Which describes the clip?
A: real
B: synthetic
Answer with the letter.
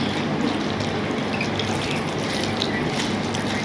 A